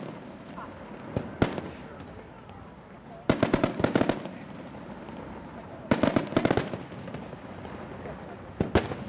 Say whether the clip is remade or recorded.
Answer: recorded